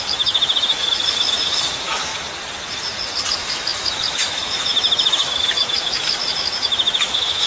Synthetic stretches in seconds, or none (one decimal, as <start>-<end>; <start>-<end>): 0.0-2.1; 3.3-7.5